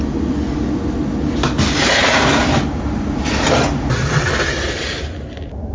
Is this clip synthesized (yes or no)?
no